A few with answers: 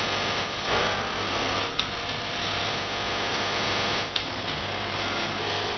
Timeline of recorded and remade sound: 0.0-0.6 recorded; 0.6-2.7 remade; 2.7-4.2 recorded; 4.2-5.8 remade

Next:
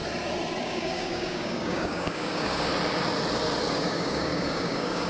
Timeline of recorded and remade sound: 0.0-0.6 recorded; 0.6-2.7 remade; 2.7-3.7 recorded; 3.7-5.1 remade

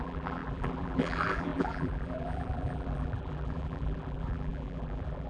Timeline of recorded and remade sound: 0.0-5.3 remade

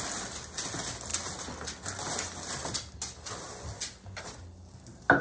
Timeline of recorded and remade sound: 0.0-5.2 recorded

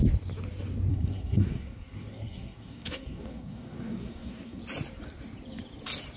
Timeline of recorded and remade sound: 0.0-0.9 recorded; 0.9-4.6 remade; 4.6-6.2 recorded

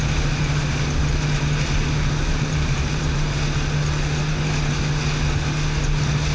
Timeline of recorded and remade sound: 0.0-2.3 recorded; 2.3-3.4 remade; 3.4-4.3 recorded; 4.3-4.8 remade; 4.8-6.3 recorded